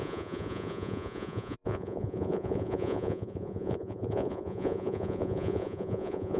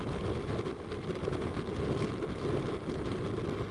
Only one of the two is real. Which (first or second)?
second